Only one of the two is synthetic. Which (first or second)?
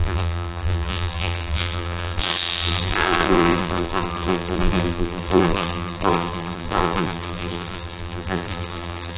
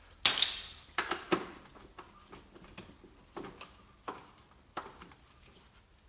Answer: first